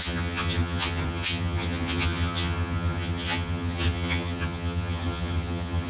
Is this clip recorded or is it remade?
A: remade